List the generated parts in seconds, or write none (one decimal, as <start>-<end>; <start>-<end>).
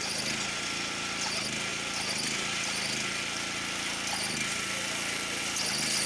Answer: none